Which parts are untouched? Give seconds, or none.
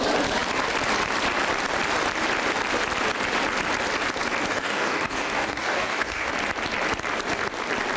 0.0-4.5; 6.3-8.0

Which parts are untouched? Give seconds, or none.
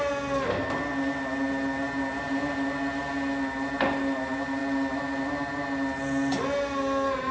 0.0-7.3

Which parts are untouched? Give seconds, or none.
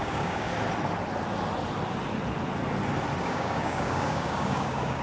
0.5-3.2